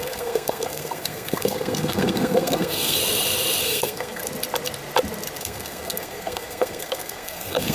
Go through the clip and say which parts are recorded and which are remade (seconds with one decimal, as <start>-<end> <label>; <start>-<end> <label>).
0.0-3.0 remade; 3.0-3.6 recorded; 3.6-4.2 remade; 4.2-5.4 recorded; 5.4-7.7 remade